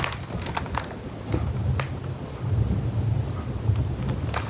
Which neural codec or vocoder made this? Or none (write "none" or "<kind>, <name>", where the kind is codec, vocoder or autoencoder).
none